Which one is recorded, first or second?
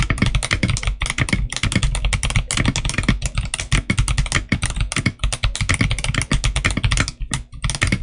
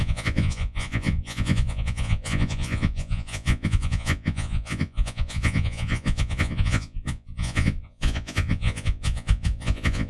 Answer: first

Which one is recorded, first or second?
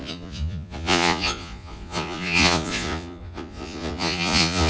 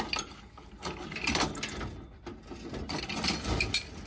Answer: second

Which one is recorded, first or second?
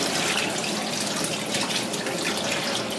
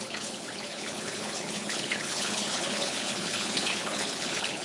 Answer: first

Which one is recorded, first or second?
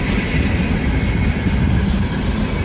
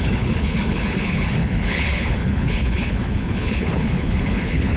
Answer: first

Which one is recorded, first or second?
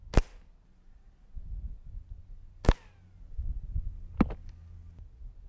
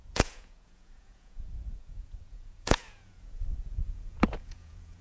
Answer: first